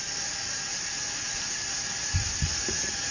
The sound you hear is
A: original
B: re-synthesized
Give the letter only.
A